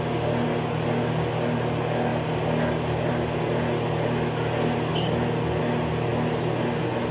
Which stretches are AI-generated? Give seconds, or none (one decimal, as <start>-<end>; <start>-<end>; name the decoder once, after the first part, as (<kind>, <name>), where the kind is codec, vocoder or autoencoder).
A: none